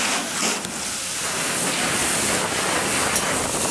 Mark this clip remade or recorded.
recorded